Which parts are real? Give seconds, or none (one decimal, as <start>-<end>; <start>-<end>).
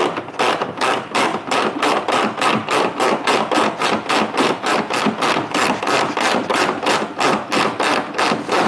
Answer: 0.0-1.3; 4.8-6.5; 7.2-8.7